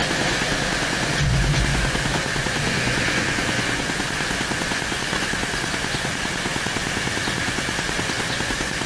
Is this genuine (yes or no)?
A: no